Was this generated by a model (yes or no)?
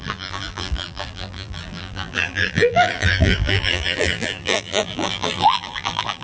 yes